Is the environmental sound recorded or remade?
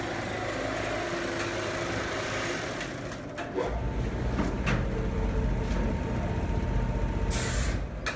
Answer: recorded